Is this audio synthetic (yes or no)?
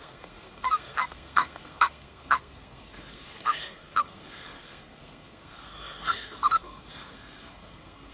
yes